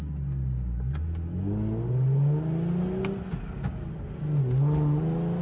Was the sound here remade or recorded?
recorded